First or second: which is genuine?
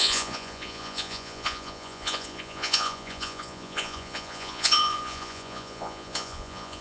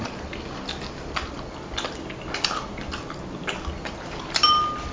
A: second